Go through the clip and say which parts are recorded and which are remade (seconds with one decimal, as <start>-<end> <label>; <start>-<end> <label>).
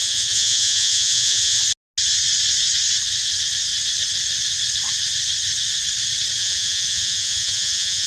0.0-1.6 remade; 1.6-6.4 recorded; 6.4-8.1 remade